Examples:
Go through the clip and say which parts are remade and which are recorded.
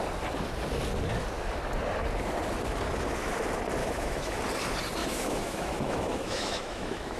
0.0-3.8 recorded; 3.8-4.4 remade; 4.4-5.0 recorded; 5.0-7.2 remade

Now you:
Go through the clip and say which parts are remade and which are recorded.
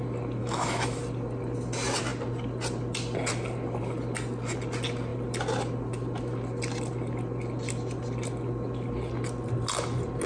0.0-0.4 recorded; 0.4-1.0 remade; 1.0-10.3 recorded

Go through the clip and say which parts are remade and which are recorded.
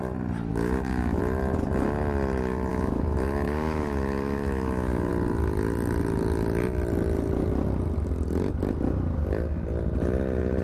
0.0-0.5 recorded; 0.5-1.2 remade; 1.2-2.7 recorded; 2.7-5.1 remade; 5.1-10.6 recorded